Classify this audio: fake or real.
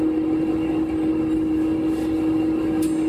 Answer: real